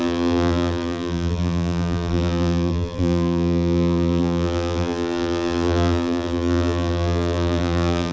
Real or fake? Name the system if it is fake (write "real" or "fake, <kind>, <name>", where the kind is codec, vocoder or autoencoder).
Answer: fake, vocoder, BigVGAN v2